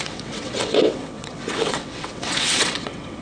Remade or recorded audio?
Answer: remade